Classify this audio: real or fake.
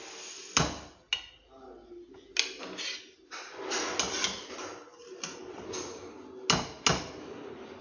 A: real